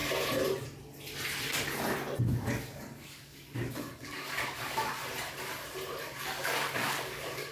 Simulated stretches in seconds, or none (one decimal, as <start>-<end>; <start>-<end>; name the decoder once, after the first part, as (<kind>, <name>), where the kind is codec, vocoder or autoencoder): 2.2-5.0 (codec, DAC); 6.0-7.5